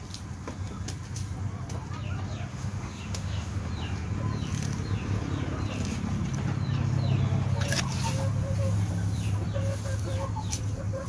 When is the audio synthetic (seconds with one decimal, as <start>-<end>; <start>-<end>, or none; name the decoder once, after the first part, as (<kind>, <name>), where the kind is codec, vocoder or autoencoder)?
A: 2.5-3.7 (autoencoder, DAC-VAE)